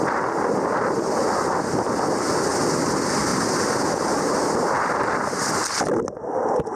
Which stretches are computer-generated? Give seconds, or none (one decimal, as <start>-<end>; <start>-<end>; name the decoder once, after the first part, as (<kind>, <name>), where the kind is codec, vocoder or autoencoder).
none